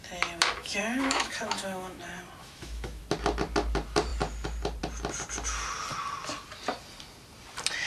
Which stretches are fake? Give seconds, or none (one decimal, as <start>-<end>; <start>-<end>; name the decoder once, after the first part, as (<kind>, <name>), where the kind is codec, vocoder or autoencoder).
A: 0.6-2.0 (autoencoder, DAC-VAE); 2.4-3.0